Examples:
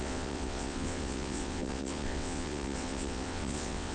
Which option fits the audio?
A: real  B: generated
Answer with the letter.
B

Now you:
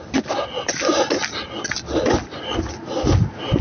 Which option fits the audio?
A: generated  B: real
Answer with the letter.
B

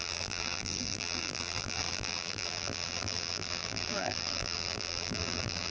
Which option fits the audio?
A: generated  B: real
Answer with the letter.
A